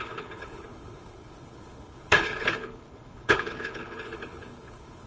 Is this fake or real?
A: fake